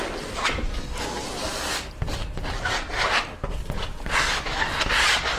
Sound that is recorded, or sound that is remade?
recorded